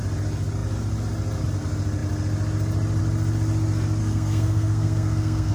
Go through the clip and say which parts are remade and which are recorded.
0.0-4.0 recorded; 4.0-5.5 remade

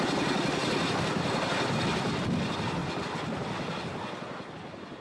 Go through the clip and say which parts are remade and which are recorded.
0.0-2.8 remade; 2.8-4.5 recorded; 4.5-5.0 remade

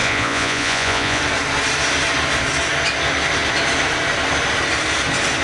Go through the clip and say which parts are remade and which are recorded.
0.0-1.2 remade; 1.2-5.4 recorded

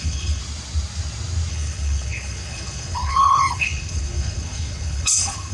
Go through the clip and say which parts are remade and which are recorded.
0.0-0.4 remade; 0.4-1.5 recorded; 1.5-5.5 remade

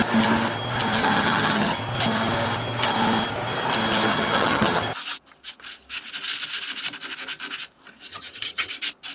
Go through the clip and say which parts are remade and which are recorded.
0.0-1.0 recorded; 1.0-1.8 remade; 1.8-4.1 recorded; 4.1-4.8 remade; 4.8-8.1 recorded; 8.1-8.7 remade; 8.7-9.1 recorded

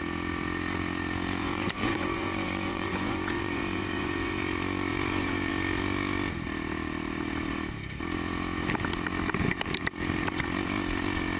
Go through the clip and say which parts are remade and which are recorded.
0.0-1.4 recorded; 1.4-4.4 remade; 4.4-4.9 recorded; 4.9-5.5 remade; 5.5-11.4 recorded

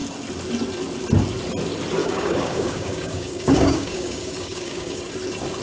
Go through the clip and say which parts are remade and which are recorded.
0.0-2.0 recorded; 2.0-5.0 remade; 5.0-5.6 recorded